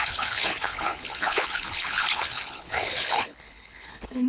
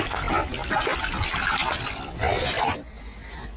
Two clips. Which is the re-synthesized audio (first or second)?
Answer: first